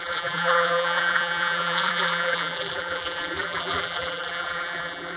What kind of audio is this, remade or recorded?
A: remade